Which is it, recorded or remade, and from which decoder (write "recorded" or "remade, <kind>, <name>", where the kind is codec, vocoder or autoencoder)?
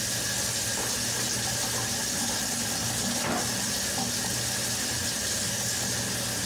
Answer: recorded